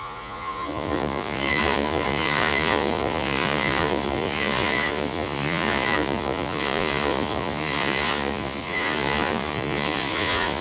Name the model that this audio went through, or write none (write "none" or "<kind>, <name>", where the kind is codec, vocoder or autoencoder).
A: vocoder, Vocos